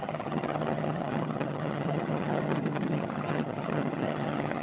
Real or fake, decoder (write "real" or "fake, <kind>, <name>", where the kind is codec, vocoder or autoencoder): fake, vocoder, HiFi-GAN